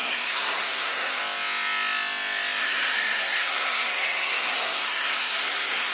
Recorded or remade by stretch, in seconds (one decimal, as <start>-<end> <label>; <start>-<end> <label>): 0.0-1.2 remade; 1.2-2.6 recorded; 2.6-5.9 remade

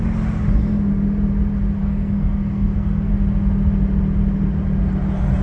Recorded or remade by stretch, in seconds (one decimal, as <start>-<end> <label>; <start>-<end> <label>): 0.0-1.8 recorded; 1.8-3.1 remade; 3.1-5.4 recorded

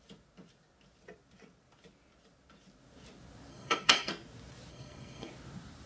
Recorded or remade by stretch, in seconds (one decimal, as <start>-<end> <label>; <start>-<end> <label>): 0.0-3.5 recorded; 3.5-4.1 remade; 4.1-4.7 recorded; 4.7-5.3 remade; 5.3-5.9 recorded

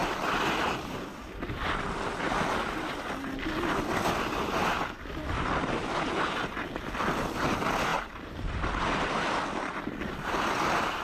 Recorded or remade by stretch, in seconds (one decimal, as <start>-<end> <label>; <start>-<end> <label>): 0.0-11.0 recorded

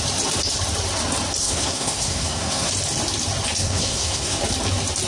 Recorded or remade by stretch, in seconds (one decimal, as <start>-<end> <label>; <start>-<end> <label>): 0.0-1.4 recorded; 1.4-2.7 remade; 2.7-3.6 recorded; 3.6-4.4 remade; 4.4-5.1 recorded